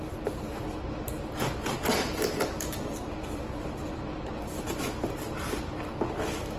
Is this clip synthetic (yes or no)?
yes